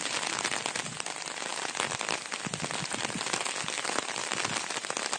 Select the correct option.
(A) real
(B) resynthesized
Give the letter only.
A